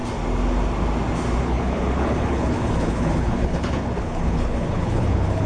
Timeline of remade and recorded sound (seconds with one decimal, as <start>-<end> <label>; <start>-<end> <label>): 0.0-1.4 recorded; 1.4-5.5 remade